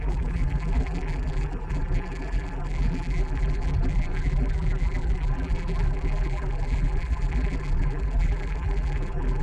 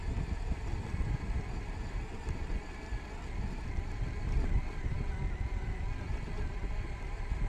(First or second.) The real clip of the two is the second